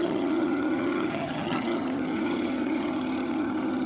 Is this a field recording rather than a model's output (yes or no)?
no